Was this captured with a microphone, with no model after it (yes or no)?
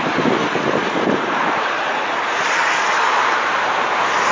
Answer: yes